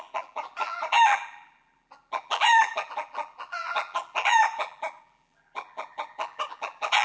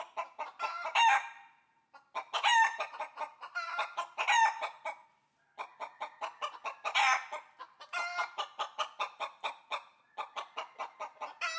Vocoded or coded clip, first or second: first